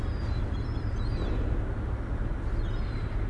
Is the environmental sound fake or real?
real